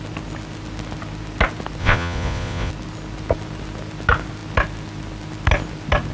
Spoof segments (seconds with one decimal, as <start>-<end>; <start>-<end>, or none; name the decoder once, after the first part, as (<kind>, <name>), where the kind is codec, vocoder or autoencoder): 1.8-2.7 (vocoder, Vocos)